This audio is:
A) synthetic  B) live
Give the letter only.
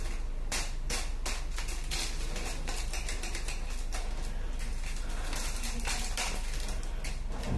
B